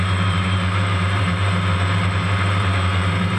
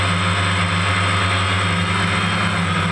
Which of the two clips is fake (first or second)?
first